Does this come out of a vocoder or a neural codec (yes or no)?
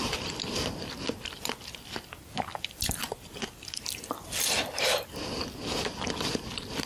yes